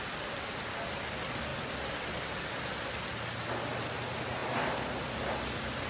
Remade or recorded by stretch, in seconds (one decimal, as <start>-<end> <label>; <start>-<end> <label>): 0.0-5.9 recorded